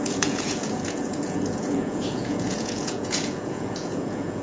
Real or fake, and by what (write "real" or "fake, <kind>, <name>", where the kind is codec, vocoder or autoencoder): fake, vocoder, Vocos